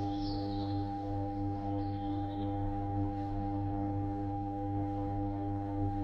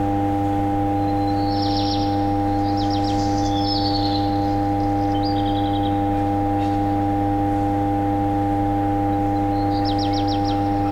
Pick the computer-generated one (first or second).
first